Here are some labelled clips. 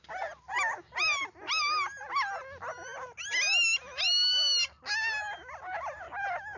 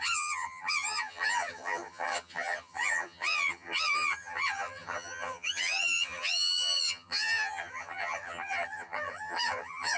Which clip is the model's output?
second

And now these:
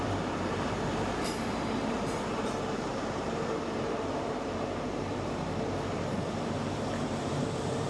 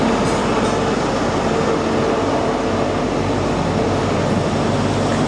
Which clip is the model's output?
first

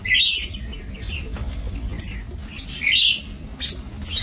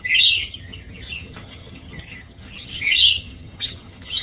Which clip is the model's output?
second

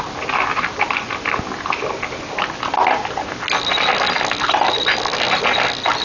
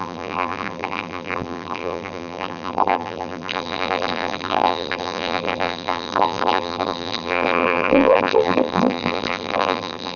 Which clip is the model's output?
second